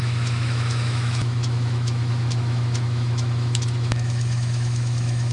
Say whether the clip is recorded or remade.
remade